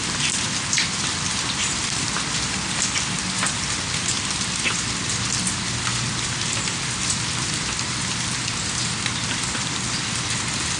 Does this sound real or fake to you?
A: real